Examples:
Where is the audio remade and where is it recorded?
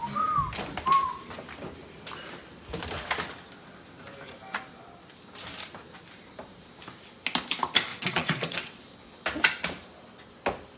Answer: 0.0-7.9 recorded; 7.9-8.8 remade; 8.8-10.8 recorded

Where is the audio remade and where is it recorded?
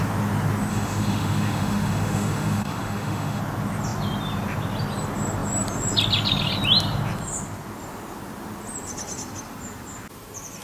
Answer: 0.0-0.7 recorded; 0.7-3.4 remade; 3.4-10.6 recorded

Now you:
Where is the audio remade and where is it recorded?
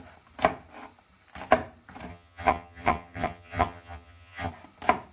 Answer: 0.0-2.1 recorded; 2.1-4.5 remade; 4.5-5.1 recorded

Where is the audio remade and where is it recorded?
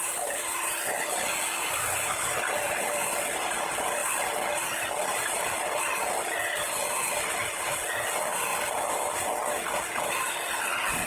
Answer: 0.0-8.5 recorded; 8.5-9.1 remade; 9.1-11.1 recorded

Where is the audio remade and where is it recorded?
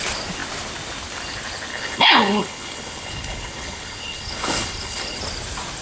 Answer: 0.0-1.7 recorded; 1.7-5.2 remade; 5.2-5.8 recorded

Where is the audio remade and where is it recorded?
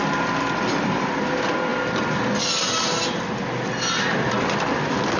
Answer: 0.0-5.2 recorded